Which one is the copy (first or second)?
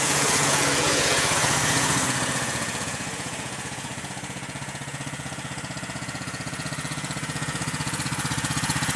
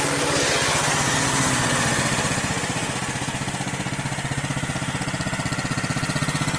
first